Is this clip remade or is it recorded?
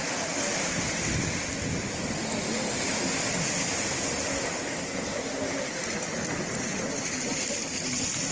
recorded